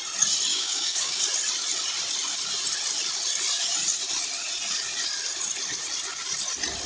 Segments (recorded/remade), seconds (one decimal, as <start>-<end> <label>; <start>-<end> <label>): 0.0-0.5 recorded; 0.5-1.2 remade; 1.2-6.9 recorded